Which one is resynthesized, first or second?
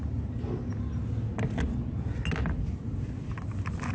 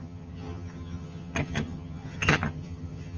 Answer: second